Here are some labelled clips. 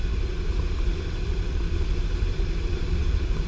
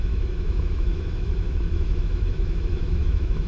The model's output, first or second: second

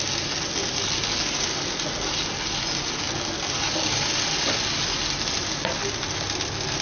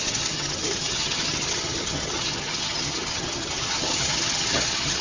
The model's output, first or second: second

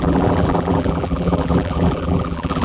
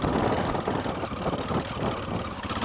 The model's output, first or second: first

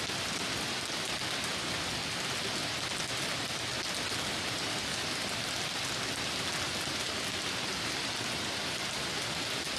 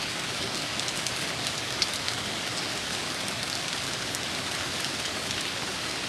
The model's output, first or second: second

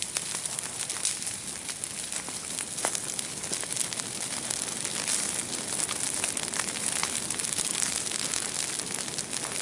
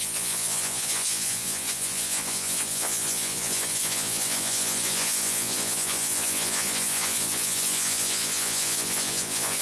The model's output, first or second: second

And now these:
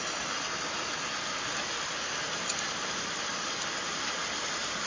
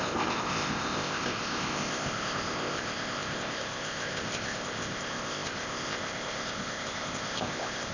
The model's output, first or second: second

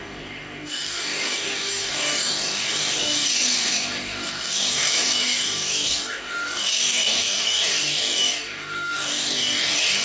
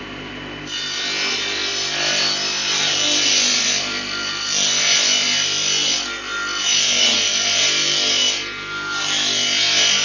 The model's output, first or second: first